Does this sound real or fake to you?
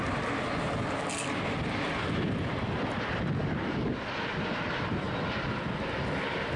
real